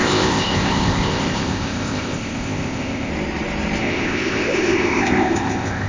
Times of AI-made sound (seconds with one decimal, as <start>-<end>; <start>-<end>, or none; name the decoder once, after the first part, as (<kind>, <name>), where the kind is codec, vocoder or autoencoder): 0.0-3.1 (codec, ZipCodec); 3.8-5.9